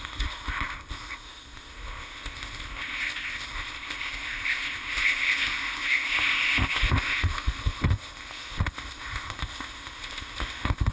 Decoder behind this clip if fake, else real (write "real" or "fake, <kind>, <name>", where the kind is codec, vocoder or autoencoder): fake, codec, ZipCodec